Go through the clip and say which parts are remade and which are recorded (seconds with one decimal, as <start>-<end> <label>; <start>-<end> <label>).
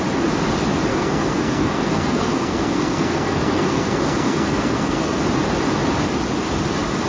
0.0-0.9 recorded; 0.9-5.2 remade; 5.2-7.1 recorded